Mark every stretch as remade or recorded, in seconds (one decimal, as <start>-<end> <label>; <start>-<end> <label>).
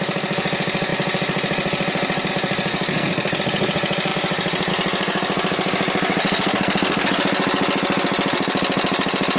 0.0-2.7 recorded; 2.7-3.4 remade; 3.4-6.2 recorded; 6.2-7.2 remade; 7.2-9.4 recorded